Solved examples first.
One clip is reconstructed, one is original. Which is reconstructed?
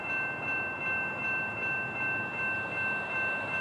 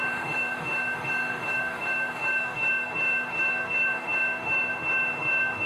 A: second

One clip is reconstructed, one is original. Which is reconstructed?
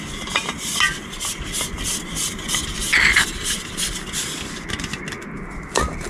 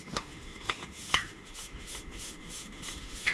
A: second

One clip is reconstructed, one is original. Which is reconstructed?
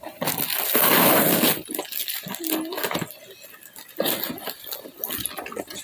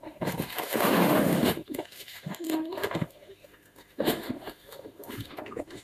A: second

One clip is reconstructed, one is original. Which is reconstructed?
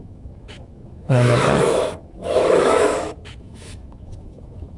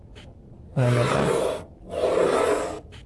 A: first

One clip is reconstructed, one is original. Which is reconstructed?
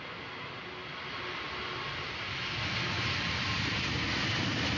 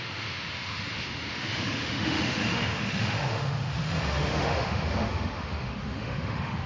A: second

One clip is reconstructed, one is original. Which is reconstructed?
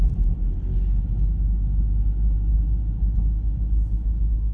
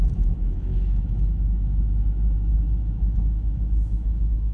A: second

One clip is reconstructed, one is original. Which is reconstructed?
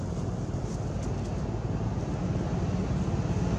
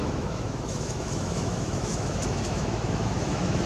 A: second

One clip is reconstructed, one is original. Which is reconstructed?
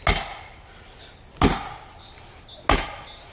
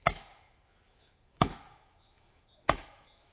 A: second